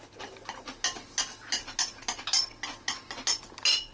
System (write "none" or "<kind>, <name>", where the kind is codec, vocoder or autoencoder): none